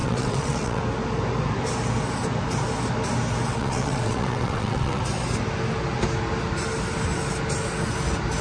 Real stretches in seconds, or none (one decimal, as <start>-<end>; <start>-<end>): 0.8-3.5; 5.0-8.4